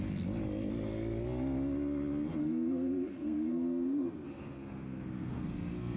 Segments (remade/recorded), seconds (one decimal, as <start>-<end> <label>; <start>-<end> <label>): 0.0-2.4 recorded; 2.4-6.0 remade